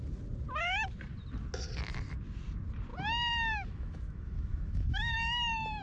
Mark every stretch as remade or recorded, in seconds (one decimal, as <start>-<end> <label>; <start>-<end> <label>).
0.0-2.9 recorded; 2.9-5.8 remade